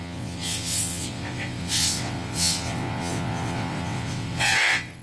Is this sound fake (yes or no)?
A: yes